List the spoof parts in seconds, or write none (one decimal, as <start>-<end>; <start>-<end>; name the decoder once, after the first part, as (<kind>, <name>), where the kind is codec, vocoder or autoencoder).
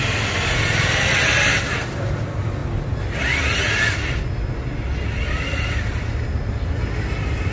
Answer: none